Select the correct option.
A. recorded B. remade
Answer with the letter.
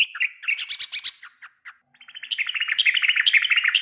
A